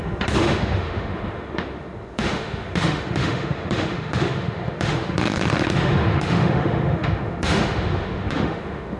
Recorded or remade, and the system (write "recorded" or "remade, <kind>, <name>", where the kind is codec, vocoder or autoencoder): remade, autoencoder, DAC-VAE